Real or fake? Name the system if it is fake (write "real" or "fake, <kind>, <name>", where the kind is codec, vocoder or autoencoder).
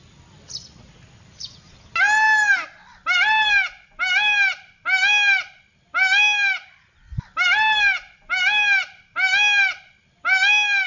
real